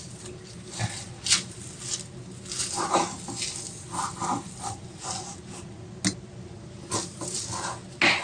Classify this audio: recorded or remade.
recorded